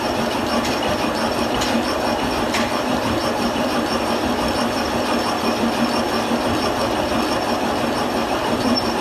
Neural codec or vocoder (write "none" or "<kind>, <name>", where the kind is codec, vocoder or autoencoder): none